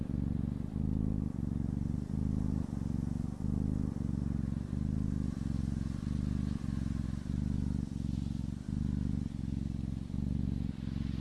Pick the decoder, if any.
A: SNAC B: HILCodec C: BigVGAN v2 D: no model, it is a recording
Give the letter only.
D